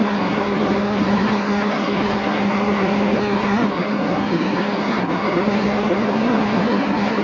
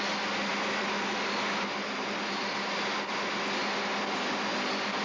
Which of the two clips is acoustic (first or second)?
second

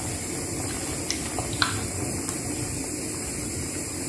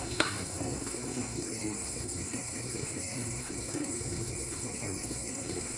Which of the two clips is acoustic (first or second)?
first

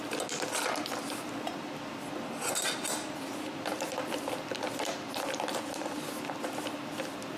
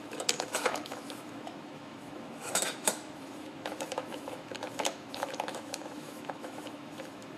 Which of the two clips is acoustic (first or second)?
first